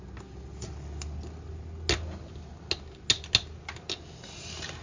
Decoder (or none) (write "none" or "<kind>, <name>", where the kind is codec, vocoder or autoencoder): none